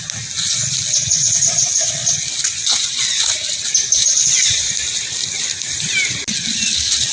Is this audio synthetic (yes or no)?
no